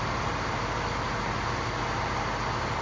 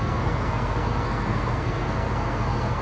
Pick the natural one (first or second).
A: first